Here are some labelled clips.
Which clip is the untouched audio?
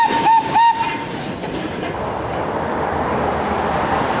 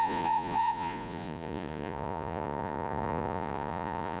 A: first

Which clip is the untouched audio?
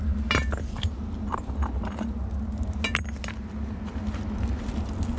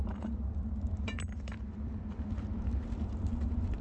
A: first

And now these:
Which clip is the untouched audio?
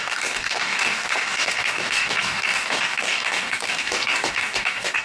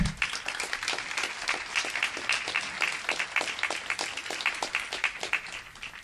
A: second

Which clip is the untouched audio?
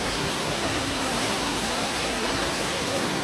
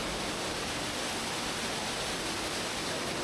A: second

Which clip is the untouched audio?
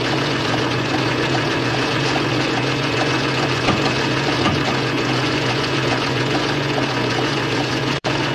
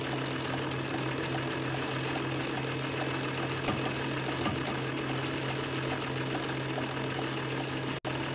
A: second